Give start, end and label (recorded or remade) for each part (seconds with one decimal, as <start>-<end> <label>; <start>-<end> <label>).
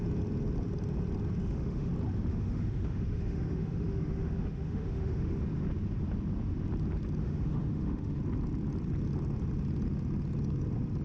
0.0-1.4 recorded; 1.4-1.9 remade; 1.9-2.3 recorded; 2.3-5.4 remade; 5.4-7.2 recorded; 7.2-8.2 remade; 8.2-11.0 recorded